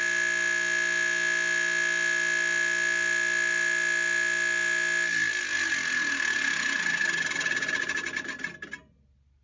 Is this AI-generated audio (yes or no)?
no